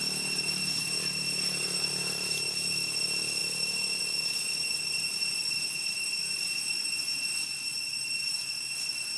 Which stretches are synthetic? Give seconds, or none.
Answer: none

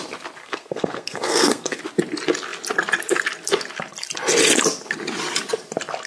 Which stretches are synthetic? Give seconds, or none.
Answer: 0.4-1.8 (codec, SNAC)

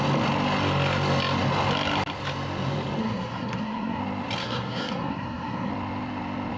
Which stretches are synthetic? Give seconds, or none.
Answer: 3.0-4.0 (codec, SNAC); 4.4-5.7